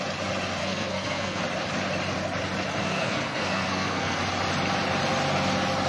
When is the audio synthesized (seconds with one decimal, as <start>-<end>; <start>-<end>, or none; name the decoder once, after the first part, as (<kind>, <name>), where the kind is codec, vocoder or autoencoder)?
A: 0.6-1.4 (codec, SNAC); 2.8-4.2